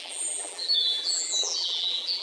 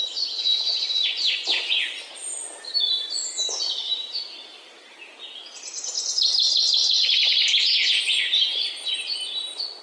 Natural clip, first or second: second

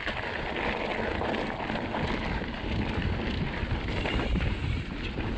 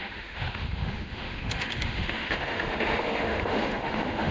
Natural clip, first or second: first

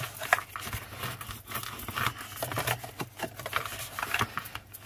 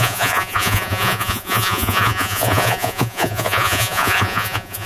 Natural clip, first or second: first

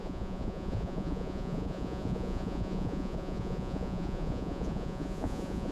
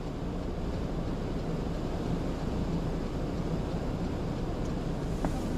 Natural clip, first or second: second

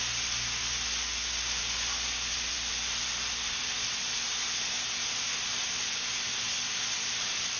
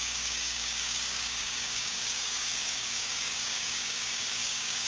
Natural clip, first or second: first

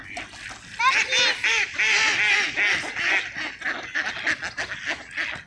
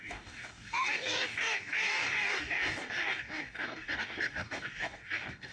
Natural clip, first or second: first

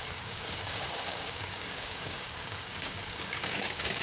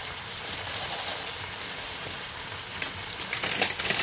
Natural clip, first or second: second